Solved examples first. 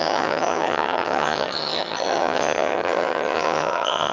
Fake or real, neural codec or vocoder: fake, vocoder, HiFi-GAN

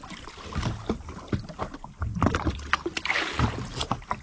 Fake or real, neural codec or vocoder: real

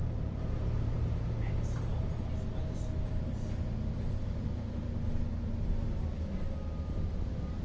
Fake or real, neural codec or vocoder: real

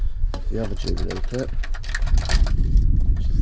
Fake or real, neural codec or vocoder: real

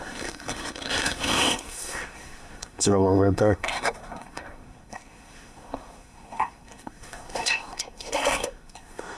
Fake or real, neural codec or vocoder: fake, codec, SNAC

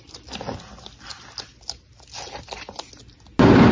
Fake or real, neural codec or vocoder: real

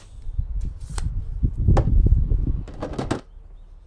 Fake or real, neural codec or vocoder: real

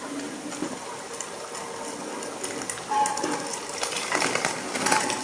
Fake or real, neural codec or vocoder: real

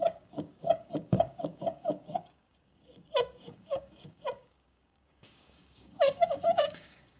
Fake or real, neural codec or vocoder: fake, codec, DAC